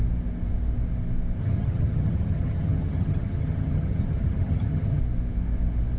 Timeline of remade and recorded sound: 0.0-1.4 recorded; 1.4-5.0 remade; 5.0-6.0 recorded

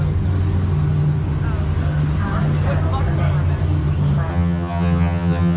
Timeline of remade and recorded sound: 0.0-4.3 recorded; 4.3-5.6 remade